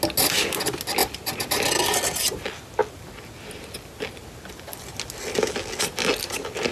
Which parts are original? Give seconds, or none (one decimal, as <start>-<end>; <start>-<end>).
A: 0.0-1.0; 1.9-6.7